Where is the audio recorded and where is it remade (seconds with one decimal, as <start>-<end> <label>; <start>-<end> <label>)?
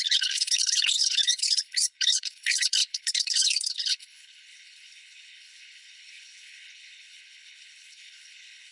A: 0.0-8.7 remade